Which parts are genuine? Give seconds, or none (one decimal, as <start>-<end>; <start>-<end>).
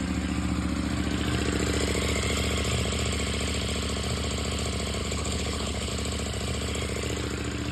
0.0-5.0; 5.9-7.7